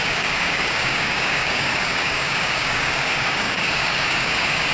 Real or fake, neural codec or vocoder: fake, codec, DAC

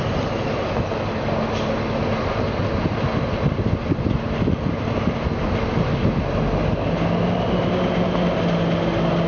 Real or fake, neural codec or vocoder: real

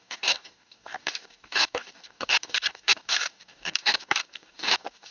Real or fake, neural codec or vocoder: fake, codec, DAC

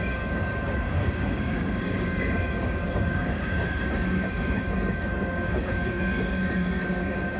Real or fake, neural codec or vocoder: fake, codec, DAC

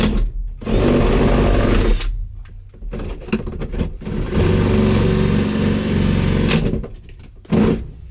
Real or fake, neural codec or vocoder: real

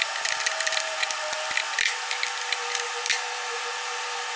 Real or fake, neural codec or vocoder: real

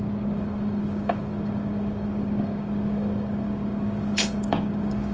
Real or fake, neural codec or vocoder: fake, codec, DAC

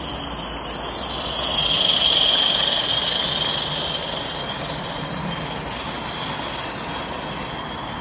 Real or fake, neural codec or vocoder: real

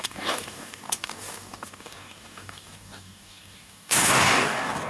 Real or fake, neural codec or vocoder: fake, codec, DAC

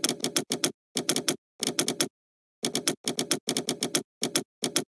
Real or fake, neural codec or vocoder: real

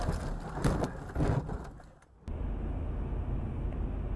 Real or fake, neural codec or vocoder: real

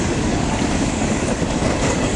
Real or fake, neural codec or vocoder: fake, codec, DAC